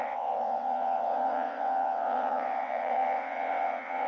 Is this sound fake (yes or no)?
yes